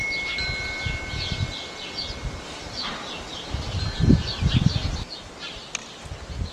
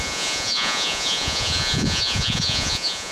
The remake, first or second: second